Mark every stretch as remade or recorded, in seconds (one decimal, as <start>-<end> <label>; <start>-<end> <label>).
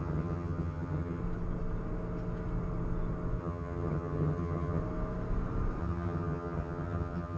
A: 0.0-1.2 remade; 1.2-3.4 recorded; 3.4-4.8 remade; 4.8-5.8 recorded; 5.8-7.4 remade